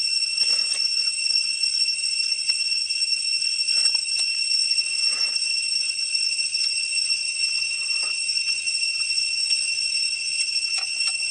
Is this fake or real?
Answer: fake